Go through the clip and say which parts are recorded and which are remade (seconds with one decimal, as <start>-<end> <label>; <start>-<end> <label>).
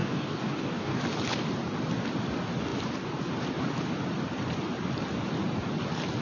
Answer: 0.0-1.0 remade; 1.0-6.2 recorded